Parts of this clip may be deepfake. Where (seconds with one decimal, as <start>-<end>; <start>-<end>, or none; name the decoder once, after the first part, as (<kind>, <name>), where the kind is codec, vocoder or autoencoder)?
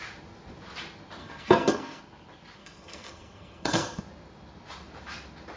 1.2-2.0 (codec, SNAC); 2.6-4.0